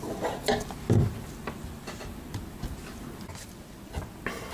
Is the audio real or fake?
real